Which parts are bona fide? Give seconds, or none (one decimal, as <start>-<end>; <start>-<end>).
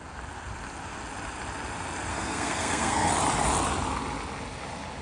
0.0-2.1; 3.1-5.0